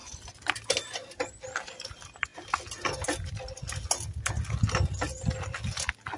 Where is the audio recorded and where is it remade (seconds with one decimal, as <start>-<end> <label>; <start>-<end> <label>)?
0.0-6.2 recorded